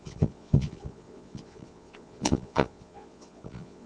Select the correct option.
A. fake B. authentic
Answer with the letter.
A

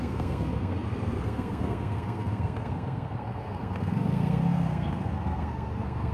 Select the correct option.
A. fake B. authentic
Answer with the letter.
A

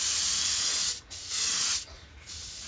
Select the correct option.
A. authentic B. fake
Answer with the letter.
B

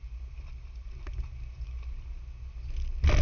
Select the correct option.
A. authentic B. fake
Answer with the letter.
A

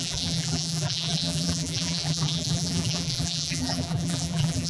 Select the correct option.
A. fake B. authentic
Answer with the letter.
A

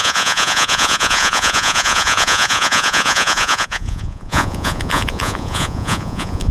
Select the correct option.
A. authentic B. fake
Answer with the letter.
B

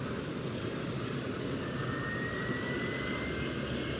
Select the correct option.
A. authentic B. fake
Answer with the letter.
A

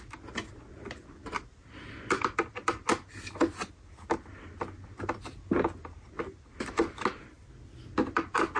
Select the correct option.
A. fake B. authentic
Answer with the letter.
B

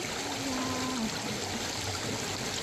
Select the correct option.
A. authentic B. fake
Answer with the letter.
A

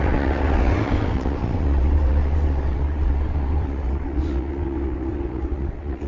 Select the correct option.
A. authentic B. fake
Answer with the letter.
B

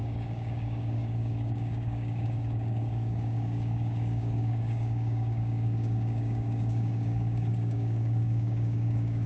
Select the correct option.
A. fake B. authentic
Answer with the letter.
A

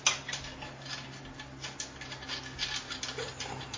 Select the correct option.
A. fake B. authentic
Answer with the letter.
B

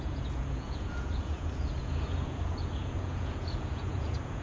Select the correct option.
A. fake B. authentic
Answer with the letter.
A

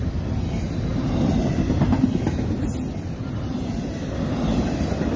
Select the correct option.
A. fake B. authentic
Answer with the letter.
B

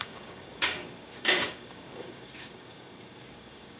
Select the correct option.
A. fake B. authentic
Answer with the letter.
A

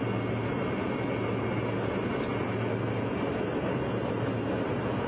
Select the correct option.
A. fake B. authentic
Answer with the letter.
B